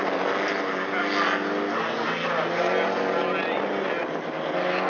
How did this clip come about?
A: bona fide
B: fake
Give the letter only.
A